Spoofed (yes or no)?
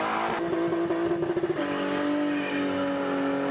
no